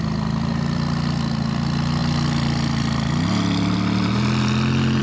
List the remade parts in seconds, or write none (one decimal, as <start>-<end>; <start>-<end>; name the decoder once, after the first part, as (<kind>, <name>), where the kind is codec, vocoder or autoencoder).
none